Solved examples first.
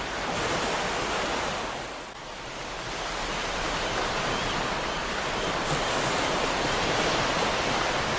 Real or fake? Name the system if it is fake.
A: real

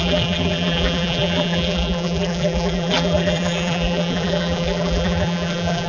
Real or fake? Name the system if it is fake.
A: fake, vocoder, BigVGAN v2